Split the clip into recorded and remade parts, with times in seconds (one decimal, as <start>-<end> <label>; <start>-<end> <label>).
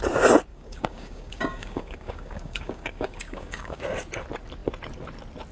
0.0-0.5 recorded; 0.5-3.8 remade; 3.8-5.5 recorded